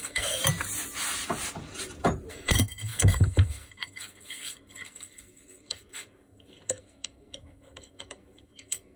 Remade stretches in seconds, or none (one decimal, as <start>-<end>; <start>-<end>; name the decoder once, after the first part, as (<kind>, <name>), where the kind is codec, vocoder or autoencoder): 0.0-0.4 (codec, SNAC); 2.3-9.0